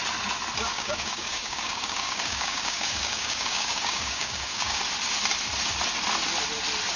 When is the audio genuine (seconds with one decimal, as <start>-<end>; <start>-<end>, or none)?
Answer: 0.0-0.7; 4.8-7.0